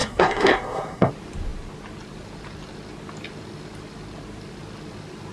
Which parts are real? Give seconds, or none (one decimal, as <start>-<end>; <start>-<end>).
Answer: 1.1-5.3